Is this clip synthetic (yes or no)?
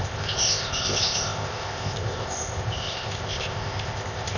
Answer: yes